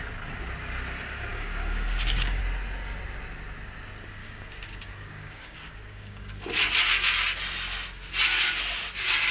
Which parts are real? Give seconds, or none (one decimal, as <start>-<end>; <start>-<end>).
0.0-1.3; 2.4-4.2; 6.5-9.3